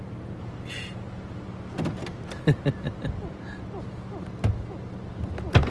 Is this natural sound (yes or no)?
yes